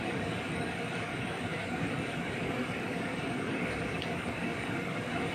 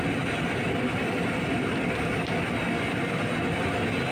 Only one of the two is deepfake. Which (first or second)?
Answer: first